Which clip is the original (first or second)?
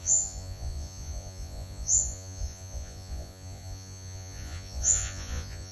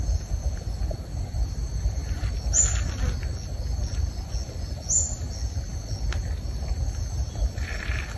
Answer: second